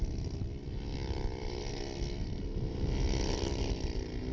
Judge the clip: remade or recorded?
recorded